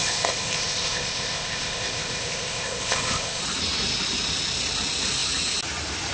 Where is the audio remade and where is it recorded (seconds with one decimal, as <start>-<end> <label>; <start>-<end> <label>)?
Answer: 0.0-3.4 remade; 3.4-6.1 recorded